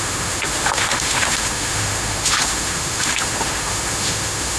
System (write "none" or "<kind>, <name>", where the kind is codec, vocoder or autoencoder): autoencoder, DAC-VAE